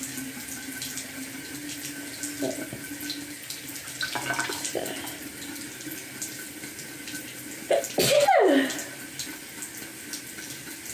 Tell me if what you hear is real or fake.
real